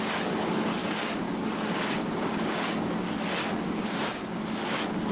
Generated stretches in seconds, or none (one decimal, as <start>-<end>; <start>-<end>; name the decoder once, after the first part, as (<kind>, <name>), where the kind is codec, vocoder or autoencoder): 0.8-2.9 (codec, DAC); 3.4-5.1